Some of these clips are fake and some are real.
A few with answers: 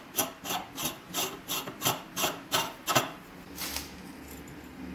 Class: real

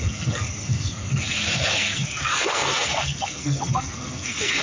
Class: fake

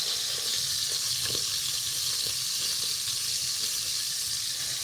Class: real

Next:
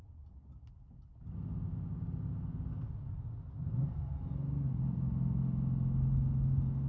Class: real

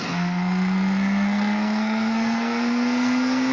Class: fake